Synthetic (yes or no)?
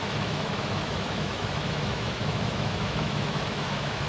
yes